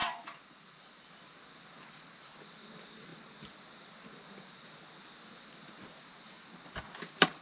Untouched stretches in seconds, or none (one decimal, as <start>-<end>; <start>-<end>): 1.1-7.4